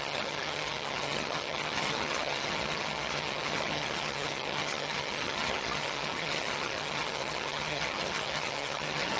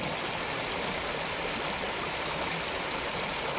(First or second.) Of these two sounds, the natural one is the second